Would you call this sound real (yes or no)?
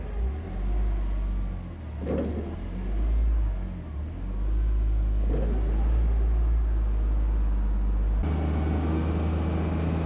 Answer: yes